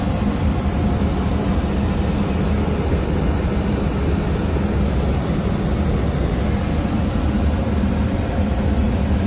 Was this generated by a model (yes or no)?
no